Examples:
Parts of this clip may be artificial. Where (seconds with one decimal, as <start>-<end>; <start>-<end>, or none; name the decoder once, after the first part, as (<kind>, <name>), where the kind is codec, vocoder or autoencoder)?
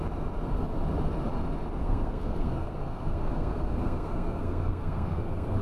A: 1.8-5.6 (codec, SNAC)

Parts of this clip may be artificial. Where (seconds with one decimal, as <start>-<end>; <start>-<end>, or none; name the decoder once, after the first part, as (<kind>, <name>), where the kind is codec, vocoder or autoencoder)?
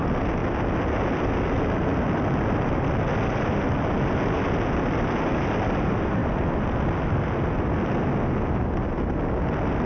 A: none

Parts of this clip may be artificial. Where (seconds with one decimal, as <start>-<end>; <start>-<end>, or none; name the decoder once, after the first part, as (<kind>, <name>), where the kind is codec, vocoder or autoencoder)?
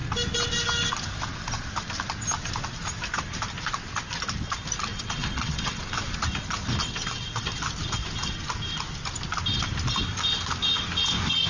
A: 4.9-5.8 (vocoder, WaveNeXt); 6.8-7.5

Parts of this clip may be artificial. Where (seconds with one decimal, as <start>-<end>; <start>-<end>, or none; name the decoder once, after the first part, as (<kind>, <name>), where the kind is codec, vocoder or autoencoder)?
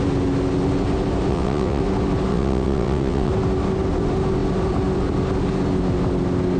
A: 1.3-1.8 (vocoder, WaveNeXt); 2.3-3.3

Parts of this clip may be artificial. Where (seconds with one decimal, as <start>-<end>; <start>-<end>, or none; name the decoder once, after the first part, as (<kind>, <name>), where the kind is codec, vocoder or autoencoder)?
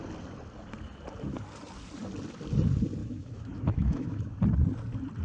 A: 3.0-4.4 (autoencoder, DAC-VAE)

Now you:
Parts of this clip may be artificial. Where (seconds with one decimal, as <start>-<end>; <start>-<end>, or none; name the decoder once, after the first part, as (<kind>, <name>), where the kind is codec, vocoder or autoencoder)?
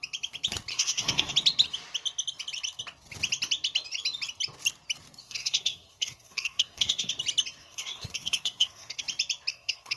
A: 0.7-1.3 (codec, SNAC); 5.2-7.1; 7.6-9.0; 9.5-10.0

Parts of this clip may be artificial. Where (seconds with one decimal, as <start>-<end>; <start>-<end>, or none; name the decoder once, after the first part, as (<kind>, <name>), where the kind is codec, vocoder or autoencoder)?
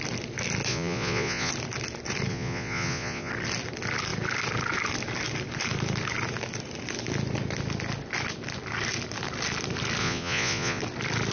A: 0.7-1.5 (vocoder, Vocos); 2.3-3.3; 10.0-10.8